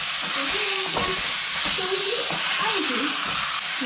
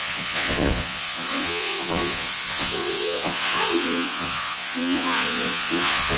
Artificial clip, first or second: second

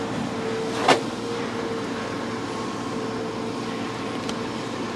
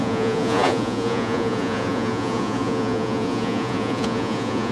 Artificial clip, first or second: second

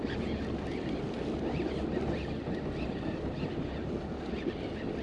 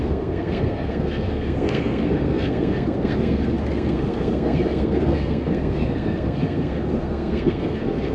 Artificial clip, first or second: second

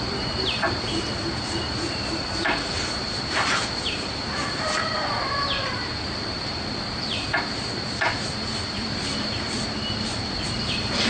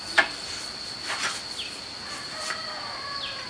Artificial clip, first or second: first